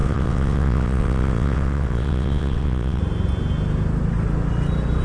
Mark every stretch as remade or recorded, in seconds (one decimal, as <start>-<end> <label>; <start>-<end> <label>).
0.0-3.0 remade; 3.0-5.0 recorded

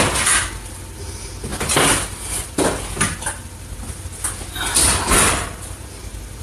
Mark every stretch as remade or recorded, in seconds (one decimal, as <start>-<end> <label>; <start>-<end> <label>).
0.0-6.4 recorded

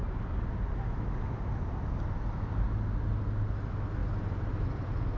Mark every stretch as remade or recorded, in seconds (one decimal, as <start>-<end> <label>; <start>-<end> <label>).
0.0-5.2 recorded

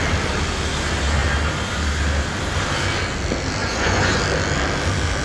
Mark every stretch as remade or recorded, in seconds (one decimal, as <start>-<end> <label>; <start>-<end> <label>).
0.0-3.6 recorded; 3.6-4.2 remade; 4.2-5.2 recorded

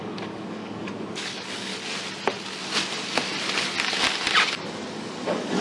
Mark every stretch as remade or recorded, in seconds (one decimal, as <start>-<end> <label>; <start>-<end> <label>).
0.0-1.7 remade; 1.7-4.6 recorded; 4.6-5.6 remade

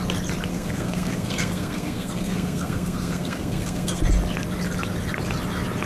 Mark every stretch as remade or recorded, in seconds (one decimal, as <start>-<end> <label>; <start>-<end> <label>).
0.0-0.5 recorded; 0.5-4.0 remade; 4.0-5.9 recorded

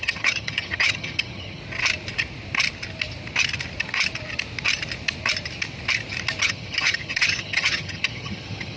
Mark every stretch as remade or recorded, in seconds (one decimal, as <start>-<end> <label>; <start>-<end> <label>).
0.0-1.6 remade; 1.6-6.4 recorded; 6.4-8.8 remade